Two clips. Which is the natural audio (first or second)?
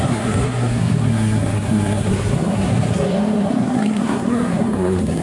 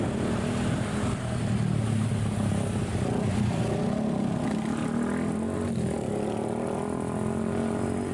second